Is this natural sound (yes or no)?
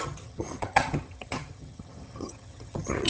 no